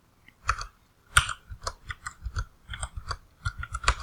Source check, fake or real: real